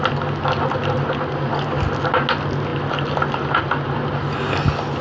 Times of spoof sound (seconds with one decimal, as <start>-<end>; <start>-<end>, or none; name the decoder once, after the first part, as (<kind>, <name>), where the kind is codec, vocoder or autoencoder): none